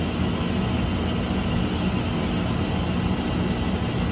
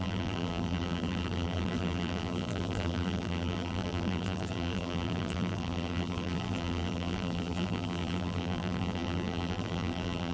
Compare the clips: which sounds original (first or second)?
first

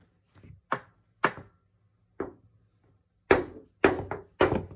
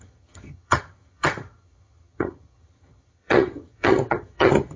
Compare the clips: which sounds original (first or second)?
first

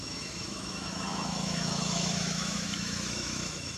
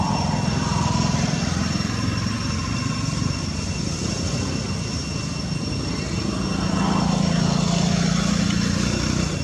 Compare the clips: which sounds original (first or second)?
second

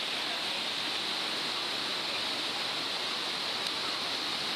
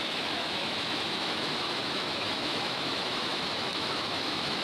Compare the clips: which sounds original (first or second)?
first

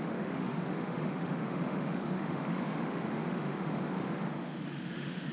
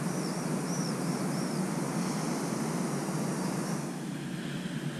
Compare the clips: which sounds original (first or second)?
second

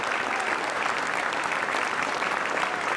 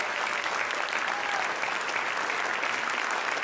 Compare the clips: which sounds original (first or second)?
second